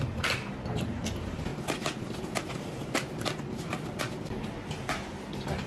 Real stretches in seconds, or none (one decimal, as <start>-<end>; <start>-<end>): 0.0-5.7

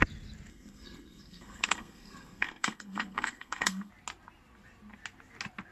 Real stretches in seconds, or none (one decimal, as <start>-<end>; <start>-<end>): 0.0-0.5; 3.9-5.7

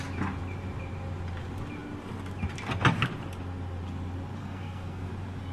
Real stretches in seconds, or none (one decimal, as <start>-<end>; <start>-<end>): 0.0-4.4; 5.1-5.5

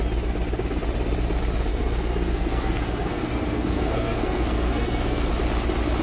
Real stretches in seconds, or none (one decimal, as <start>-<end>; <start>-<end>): 0.0-1.7; 5.3-6.0